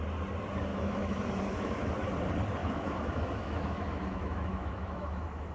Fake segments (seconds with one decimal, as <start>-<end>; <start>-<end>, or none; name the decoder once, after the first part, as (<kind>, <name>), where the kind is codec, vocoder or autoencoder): 0.7-1.9 (autoencoder, DAC-VAE); 2.6-5.5